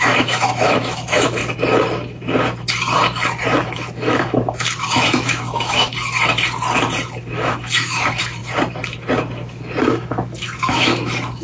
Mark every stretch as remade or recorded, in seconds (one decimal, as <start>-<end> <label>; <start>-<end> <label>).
0.0-1.4 remade; 1.4-3.6 recorded; 3.6-5.9 remade; 5.9-7.2 recorded; 7.2-8.4 remade; 8.4-9.8 recorded; 9.8-11.4 remade